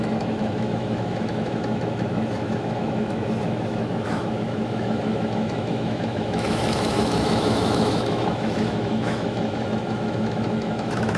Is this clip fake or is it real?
fake